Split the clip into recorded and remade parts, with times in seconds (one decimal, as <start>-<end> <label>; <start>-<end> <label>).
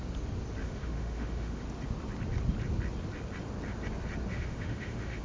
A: 0.0-0.6 recorded; 0.6-1.6 remade; 1.6-4.3 recorded; 4.3-5.2 remade